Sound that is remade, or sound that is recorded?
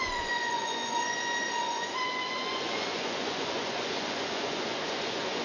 remade